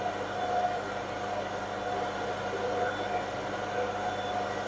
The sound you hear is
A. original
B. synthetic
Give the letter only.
A